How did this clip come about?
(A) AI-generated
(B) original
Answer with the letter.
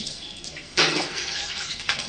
A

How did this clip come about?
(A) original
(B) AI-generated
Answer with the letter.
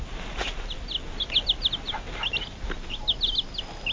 A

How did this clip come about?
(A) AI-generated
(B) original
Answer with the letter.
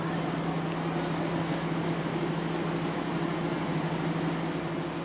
B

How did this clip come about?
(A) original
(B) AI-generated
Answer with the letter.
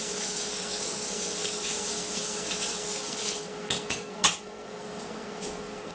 B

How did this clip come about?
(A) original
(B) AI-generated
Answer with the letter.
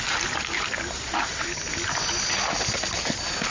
A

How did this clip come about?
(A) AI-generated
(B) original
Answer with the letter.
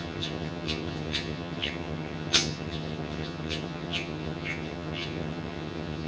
A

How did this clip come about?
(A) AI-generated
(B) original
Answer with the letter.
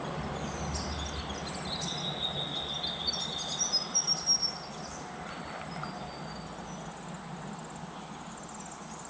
B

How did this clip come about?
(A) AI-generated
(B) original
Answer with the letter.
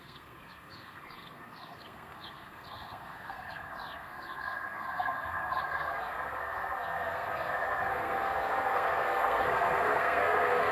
A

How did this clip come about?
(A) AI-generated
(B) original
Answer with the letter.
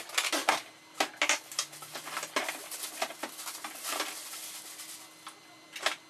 B